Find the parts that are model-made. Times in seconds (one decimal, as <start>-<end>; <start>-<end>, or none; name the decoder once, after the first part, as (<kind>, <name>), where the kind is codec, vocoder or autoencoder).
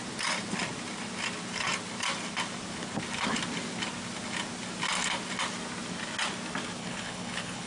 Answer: 6.8-7.7 (codec, HILCodec)